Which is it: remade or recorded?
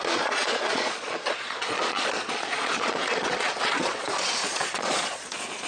remade